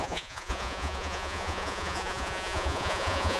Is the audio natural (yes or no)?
no